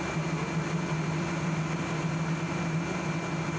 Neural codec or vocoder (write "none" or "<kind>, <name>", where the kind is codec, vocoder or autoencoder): none